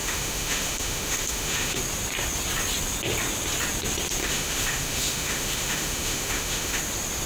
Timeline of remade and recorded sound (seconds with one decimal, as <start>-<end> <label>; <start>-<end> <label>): 0.0-1.8 remade; 1.8-4.2 recorded; 4.2-6.8 remade; 6.8-7.3 recorded